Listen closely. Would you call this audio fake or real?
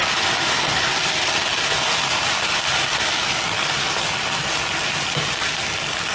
real